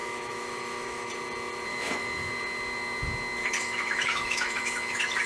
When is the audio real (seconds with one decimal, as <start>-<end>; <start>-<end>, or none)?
1.1-1.7; 2.3-3.4